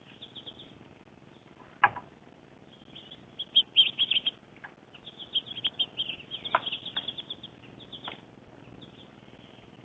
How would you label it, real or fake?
real